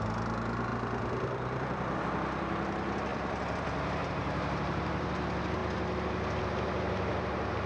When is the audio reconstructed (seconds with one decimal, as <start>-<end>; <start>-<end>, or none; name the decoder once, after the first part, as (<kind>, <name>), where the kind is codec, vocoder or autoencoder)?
0.7-2.0 (vocoder, BigVGAN v2); 3.1-4.1